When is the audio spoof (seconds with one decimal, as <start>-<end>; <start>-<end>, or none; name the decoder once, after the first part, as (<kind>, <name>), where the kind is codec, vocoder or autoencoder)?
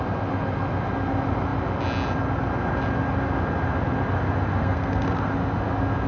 4.6-5.3 (codec, SNAC)